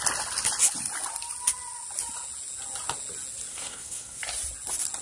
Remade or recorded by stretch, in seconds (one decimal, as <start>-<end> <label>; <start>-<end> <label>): 0.0-3.5 recorded; 3.5-4.2 remade; 4.2-5.0 recorded